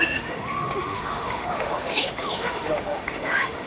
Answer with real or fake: fake